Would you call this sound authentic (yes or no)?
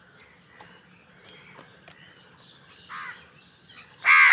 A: yes